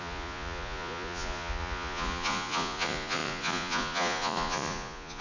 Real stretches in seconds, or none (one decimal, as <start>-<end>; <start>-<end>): none